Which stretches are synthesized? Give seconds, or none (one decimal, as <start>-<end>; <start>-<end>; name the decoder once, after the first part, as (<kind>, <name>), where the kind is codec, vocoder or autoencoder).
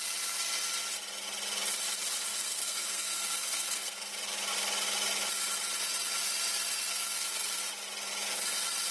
2.3-4.1 (codec, SNAC); 6.9-7.5